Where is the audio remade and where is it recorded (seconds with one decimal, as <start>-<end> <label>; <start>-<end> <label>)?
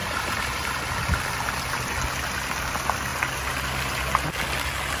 0.0-0.8 remade; 0.8-5.0 recorded